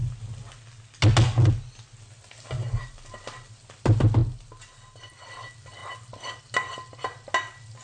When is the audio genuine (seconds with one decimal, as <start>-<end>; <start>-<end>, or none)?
0.0-7.8